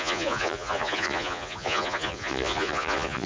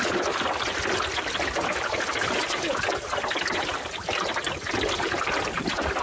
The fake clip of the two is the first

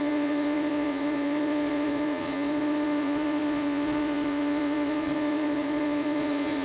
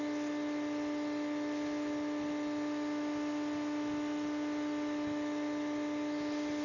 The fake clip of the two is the first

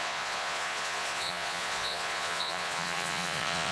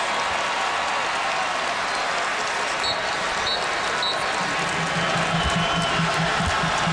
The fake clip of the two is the first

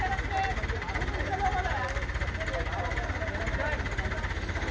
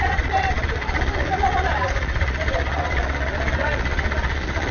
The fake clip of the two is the second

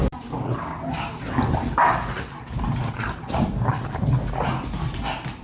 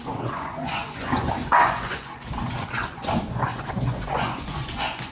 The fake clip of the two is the second